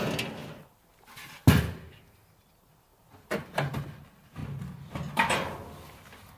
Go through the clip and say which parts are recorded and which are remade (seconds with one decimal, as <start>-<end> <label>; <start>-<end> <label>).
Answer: 0.0-2.9 recorded; 2.9-3.7 remade; 3.7-6.4 recorded